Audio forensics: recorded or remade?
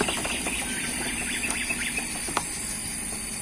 recorded